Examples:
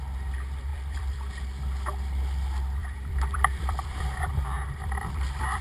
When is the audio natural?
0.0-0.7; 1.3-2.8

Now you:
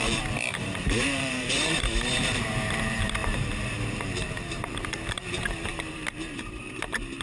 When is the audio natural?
none

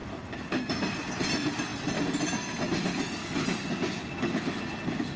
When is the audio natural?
1.1-5.2

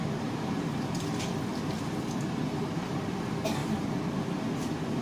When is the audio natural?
1.5-2.0; 3.6-4.1

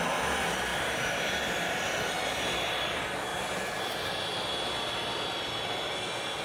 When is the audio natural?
0.0-0.7; 2.1-6.4

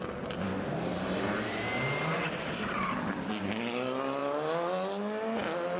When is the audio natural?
0.0-5.8

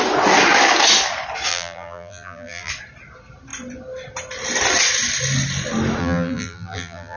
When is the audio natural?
0.0-1.5; 2.7-6.0